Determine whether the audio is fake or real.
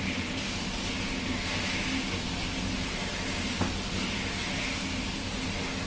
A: real